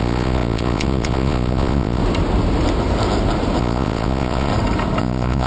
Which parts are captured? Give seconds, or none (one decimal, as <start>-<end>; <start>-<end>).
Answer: 2.0-3.6; 4.5-5.0